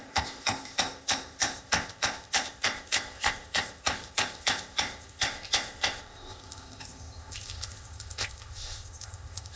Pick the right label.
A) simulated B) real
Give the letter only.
A